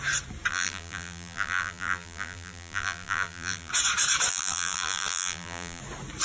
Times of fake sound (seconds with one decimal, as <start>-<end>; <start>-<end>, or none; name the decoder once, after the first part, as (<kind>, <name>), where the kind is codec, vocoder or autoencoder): 0.5-3.7 (vocoder, BigVGAN v2); 4.3-5.8